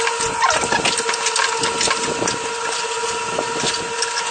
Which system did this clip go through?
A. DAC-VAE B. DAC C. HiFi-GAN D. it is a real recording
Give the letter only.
D